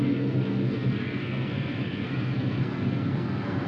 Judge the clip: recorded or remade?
remade